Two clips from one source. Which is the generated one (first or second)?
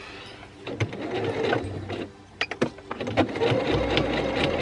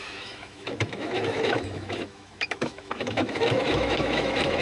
second